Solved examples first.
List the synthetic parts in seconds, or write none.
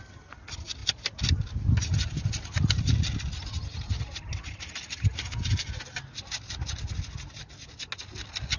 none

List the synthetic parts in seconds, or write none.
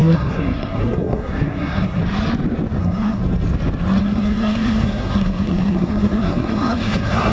0.0-2.0 (codec, SNAC); 2.8-3.2; 4.0-7.3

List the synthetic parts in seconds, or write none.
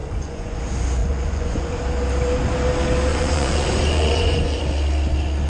0.0-0.6 (vocoder, Vocos); 1.0-1.8; 3.1-4.6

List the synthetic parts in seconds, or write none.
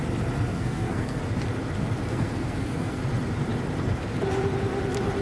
0.5-1.2 (codec, SNAC); 2.1-3.0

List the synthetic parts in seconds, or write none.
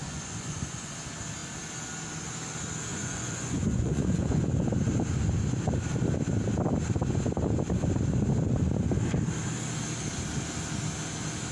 0.0-0.9 (vocoder, Vocos); 2.9-4.5